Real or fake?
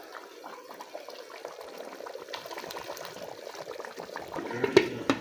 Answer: real